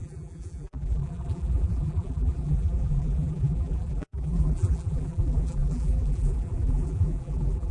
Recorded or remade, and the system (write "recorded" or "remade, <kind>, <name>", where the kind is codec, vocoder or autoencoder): remade, vocoder, BigVGAN v2